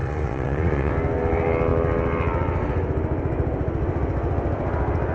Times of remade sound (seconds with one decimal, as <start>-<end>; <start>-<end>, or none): 0.0-0.9